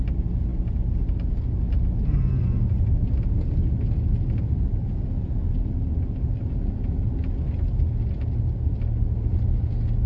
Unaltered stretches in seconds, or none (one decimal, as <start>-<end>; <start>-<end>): 0.0-10.1